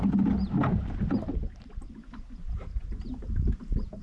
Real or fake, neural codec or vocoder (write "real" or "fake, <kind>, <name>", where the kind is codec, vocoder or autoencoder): real